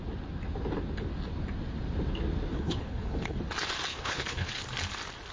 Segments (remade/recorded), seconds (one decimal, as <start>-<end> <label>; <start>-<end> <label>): 0.0-2.5 recorded; 2.5-3.4 remade; 3.4-3.9 recorded; 3.9-4.6 remade; 4.6-5.3 recorded